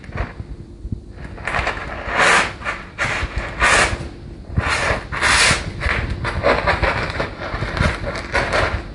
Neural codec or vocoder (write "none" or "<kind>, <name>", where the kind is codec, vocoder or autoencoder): none